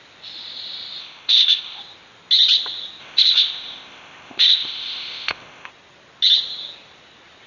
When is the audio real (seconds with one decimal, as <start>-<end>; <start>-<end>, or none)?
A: 0.0-1.0; 1.8-3.0; 5.7-7.5